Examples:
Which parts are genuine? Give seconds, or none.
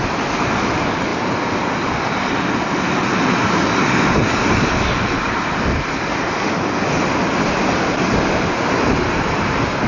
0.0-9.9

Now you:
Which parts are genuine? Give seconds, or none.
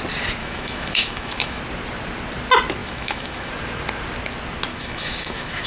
0.0-0.4; 1.6-2.8; 3.5-4.7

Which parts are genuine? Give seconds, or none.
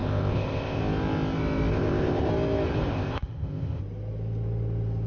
0.8-1.7; 2.3-2.9; 3.8-5.1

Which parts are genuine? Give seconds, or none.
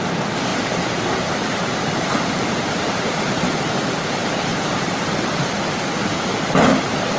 0.0-0.5; 3.2-4.5; 5.2-6.3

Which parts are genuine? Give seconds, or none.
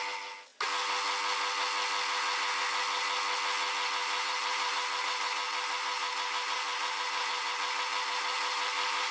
0.0-4.0